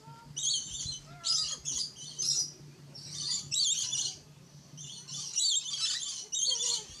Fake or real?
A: fake